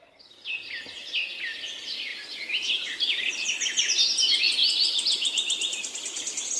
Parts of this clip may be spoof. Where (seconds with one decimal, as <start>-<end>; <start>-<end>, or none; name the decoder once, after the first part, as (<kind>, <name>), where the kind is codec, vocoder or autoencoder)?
2.1-3.3 (vocoder, BigVGAN v2); 4.6-6.6